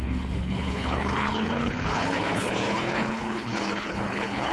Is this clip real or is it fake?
fake